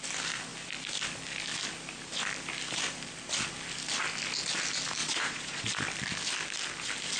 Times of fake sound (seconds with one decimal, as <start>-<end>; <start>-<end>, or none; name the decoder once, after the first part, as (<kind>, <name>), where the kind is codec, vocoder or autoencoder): 5.0-5.7 (vocoder, Vocos)